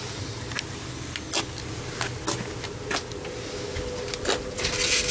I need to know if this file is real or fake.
real